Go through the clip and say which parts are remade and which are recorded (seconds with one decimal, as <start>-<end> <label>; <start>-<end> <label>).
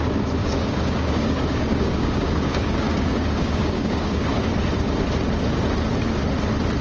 0.0-0.4 recorded; 0.4-4.5 remade; 4.5-6.8 recorded